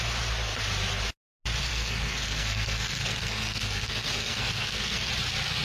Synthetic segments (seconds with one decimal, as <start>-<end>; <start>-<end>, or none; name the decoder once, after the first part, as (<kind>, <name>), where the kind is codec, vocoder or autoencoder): 1.7-5.1 (codec, SNAC)